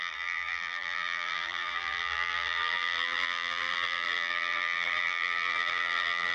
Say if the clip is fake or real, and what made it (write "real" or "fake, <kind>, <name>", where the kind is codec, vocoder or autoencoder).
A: fake, vocoder, BigVGAN v2